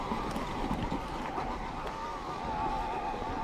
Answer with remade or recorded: recorded